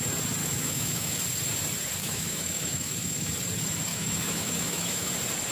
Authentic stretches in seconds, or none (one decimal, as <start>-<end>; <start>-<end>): 0.0-0.4; 1.2-2.0; 3.3-3.9; 5.1-5.5